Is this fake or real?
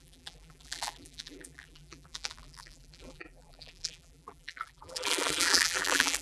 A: fake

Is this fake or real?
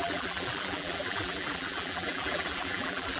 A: fake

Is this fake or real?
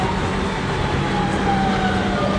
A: real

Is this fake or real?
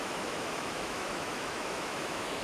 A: fake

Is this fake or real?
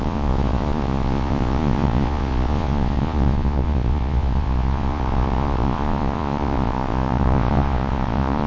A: fake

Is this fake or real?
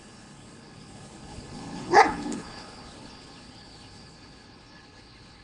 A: fake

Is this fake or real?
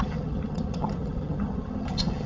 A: fake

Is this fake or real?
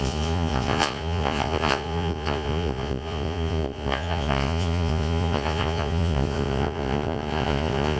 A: fake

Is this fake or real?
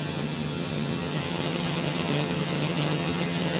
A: fake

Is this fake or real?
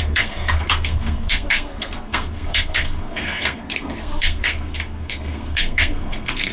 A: fake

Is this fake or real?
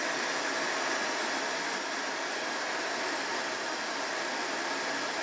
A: real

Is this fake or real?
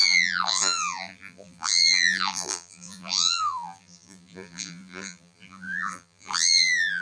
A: fake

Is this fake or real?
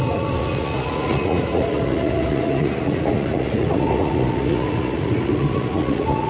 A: fake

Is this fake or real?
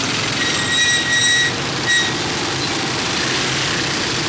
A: real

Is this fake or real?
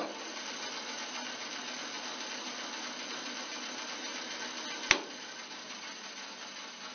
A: real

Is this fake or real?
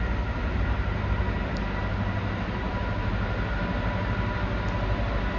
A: real